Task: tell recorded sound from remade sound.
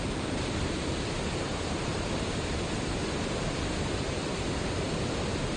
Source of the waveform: remade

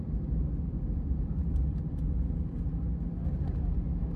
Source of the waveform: recorded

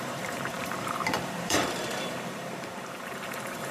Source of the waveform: remade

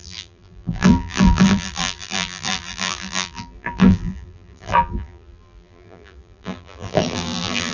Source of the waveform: remade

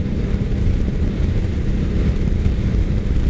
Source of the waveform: remade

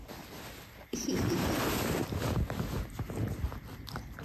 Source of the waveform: recorded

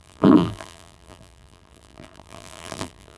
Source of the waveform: remade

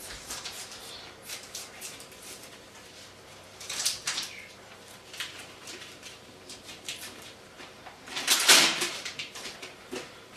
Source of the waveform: remade